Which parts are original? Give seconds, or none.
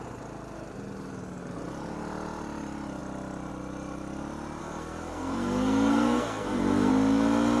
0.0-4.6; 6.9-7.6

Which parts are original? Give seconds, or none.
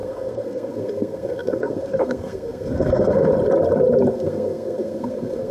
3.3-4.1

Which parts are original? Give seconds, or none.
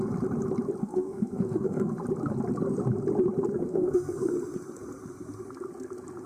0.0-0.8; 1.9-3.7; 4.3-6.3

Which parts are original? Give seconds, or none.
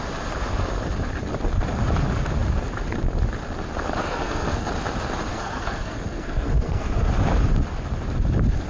0.0-4.0; 4.7-5.3; 7.1-8.7